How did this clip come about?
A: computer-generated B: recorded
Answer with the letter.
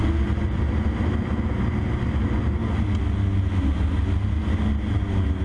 B